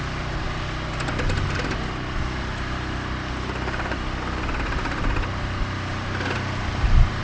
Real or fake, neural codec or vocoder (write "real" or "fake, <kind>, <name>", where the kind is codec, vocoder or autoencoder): real